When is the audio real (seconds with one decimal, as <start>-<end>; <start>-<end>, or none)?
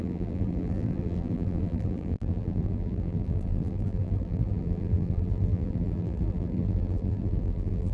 none